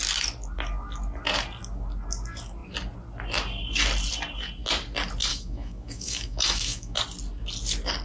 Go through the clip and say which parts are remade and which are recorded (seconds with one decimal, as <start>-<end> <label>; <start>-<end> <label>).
0.0-5.3 recorded; 5.3-7.0 remade; 7.0-8.0 recorded